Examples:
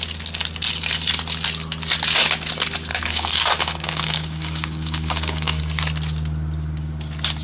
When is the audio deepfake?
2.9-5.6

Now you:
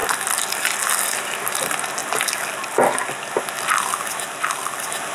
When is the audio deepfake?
none

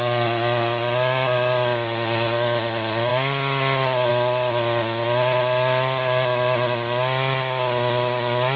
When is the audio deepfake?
none

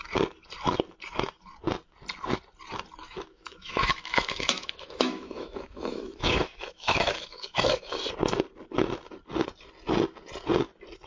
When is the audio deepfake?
3.0-8.0